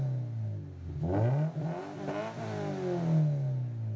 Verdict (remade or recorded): recorded